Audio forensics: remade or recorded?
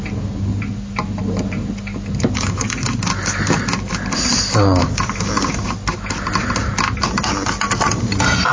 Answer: recorded